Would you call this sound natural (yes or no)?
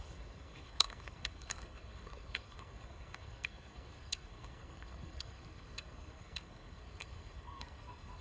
no